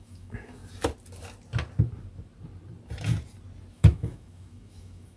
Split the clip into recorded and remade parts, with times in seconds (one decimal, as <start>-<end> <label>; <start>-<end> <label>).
0.0-0.6 remade; 0.6-3.7 recorded; 3.7-5.2 remade